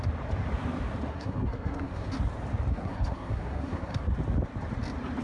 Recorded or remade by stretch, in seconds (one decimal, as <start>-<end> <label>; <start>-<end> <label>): 0.0-1.1 recorded; 1.1-2.1 remade; 2.1-2.7 recorded; 2.7-4.0 remade; 4.0-5.2 recorded